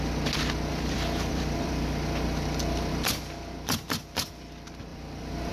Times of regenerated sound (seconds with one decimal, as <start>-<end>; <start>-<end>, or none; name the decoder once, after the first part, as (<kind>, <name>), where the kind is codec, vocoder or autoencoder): 0.7-2.9 (vocoder, BigVGAN v2); 4.9-5.5